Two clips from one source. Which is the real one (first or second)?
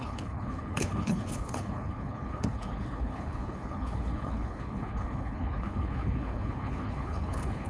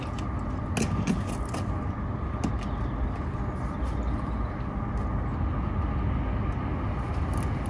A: second